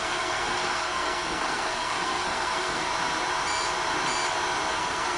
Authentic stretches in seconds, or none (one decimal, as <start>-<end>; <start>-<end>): 2.9-4.7